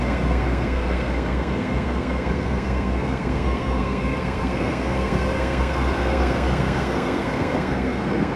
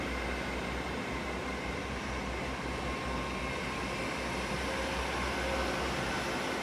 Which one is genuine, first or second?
second